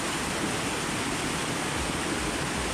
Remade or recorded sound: recorded